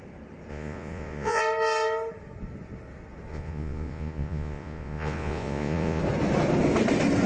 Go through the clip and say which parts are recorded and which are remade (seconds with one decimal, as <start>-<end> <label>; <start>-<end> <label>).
0.0-0.5 recorded; 0.5-1.4 remade; 1.4-3.3 recorded; 3.3-6.0 remade; 6.0-7.3 recorded